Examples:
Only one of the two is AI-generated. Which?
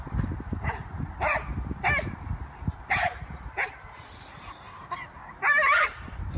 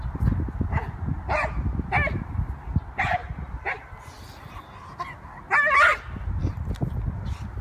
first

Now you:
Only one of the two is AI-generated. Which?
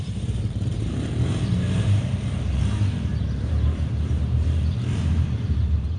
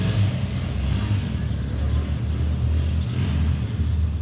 first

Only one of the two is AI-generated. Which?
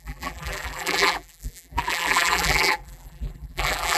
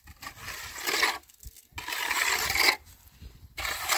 first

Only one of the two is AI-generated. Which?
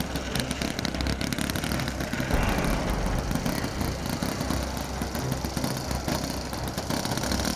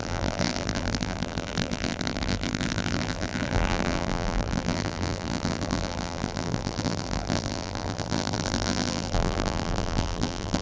second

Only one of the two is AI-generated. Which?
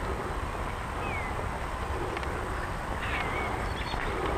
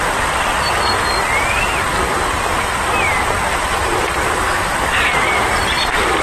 second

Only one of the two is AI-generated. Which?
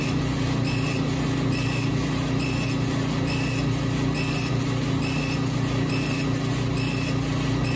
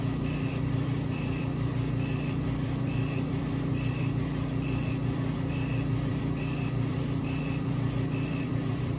second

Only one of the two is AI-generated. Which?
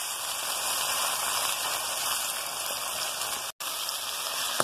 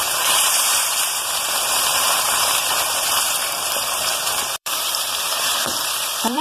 second